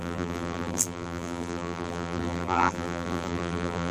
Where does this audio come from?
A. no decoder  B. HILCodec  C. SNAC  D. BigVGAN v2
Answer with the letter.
D